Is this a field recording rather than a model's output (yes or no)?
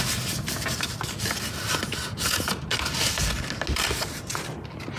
yes